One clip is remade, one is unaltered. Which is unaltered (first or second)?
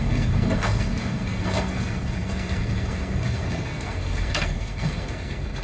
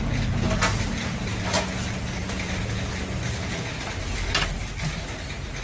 second